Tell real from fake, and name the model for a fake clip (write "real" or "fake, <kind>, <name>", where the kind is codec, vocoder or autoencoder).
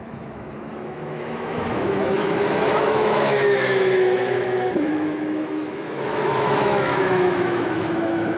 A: fake, autoencoder, DAC-VAE